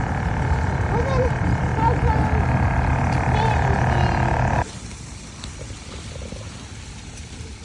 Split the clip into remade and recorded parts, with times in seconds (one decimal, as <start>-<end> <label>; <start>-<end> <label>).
0.0-1.7 remade; 1.7-2.9 recorded; 2.9-7.6 remade